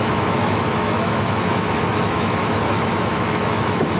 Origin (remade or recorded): remade